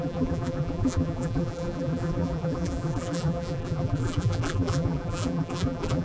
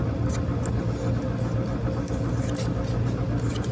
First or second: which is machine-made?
first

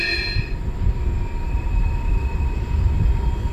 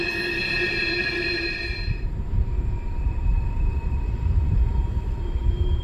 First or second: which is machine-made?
second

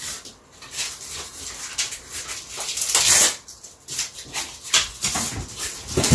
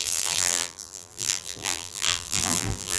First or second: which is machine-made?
second